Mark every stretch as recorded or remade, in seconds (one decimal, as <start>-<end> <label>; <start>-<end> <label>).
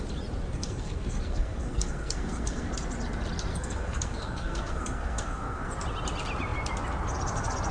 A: 0.0-0.5 recorded; 0.5-2.7 remade; 2.7-3.5 recorded; 3.5-5.7 remade; 5.7-7.7 recorded